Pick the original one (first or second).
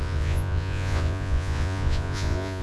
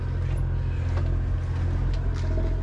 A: second